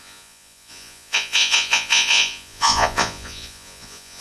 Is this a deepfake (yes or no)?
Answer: yes